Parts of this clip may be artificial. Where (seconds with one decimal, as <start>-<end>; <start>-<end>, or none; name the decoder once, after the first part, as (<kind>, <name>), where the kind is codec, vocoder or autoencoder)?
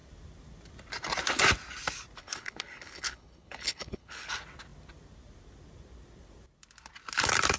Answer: 2.2-4.3 (codec, HILCodec)